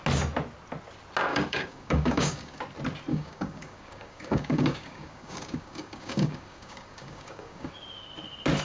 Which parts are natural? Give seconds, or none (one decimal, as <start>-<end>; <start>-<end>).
0.0-1.3; 2.6-3.1; 7.7-8.6